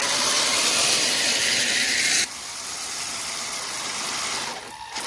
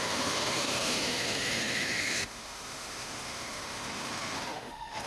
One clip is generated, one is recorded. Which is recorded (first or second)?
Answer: first